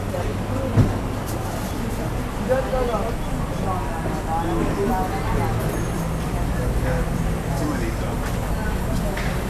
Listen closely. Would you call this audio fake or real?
real